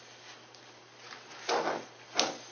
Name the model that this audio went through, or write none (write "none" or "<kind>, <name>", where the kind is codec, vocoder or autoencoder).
none